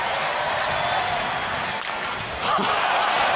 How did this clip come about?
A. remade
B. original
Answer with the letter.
B